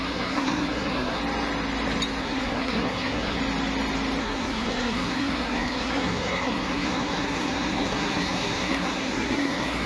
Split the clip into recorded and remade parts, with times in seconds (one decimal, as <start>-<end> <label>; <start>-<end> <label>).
0.0-1.2 remade; 1.2-2.2 recorded; 2.2-3.4 remade; 3.4-4.2 recorded; 4.2-9.9 remade